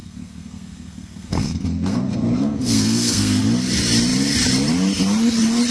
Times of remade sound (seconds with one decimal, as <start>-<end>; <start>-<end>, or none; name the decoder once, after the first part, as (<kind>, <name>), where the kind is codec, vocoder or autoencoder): 0.0-3.4 (codec, SNAC)